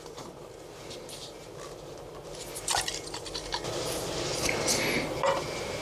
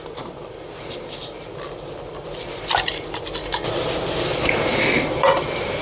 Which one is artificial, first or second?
second